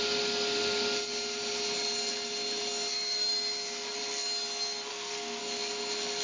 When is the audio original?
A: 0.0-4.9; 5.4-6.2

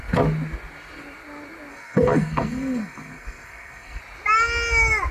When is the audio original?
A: 0.0-1.7; 4.0-5.1

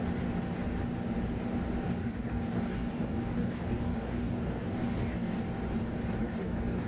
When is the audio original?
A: 0.0-2.0; 5.4-6.2

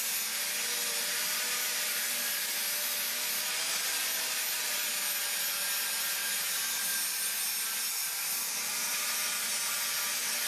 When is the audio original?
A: 0.0-0.8; 2.4-6.9; 9.2-10.5

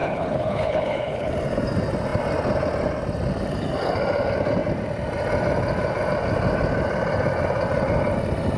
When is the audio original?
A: 1.3-8.6

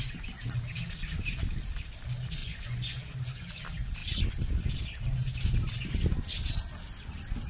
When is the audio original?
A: 0.0-2.4; 3.6-7.5

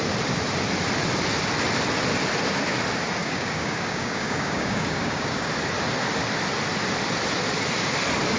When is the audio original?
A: 0.0-3.2; 5.5-8.4